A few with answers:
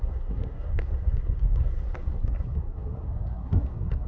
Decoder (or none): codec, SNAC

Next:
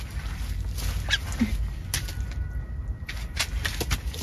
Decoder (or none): none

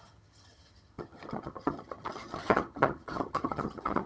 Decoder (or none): vocoder, HiFi-GAN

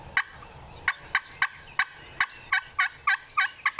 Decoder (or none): none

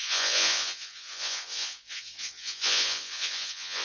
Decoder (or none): vocoder, Vocos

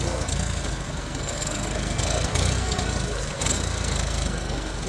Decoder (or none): codec, SNAC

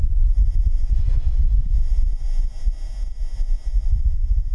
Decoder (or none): none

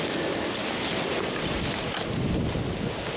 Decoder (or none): none